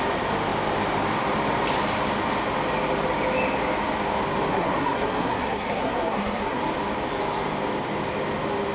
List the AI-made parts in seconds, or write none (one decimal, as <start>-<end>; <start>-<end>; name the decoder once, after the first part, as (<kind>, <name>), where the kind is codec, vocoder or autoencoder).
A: 4.5-6.6 (codec, SNAC)